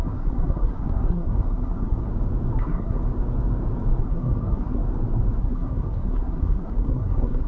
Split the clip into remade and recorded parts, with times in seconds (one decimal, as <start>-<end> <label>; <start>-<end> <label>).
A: 0.0-2.1 remade; 2.1-2.6 recorded; 2.6-3.0 remade; 3.0-4.0 recorded; 4.0-4.8 remade; 4.8-5.4 recorded; 5.4-7.5 remade